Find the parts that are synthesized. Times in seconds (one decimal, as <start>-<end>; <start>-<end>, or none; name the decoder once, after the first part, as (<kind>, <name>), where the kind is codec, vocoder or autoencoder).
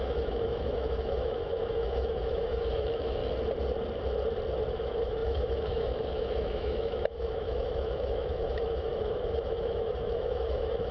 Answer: 0.0-3.2 (autoencoder, DAC-VAE); 4.7-10.9